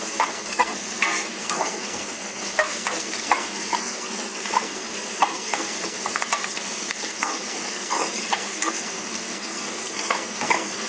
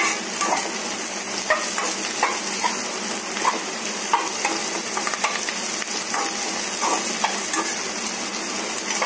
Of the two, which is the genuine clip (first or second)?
second